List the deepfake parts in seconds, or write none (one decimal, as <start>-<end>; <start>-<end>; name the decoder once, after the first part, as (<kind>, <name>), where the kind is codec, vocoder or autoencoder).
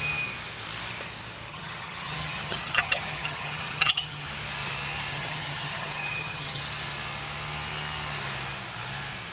1.5-4.3 (vocoder, HiFi-GAN); 5.1-6.6